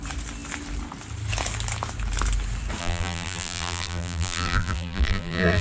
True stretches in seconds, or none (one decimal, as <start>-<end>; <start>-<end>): 0.0-2.8